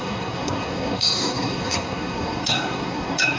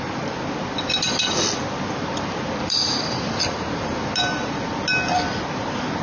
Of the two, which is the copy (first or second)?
first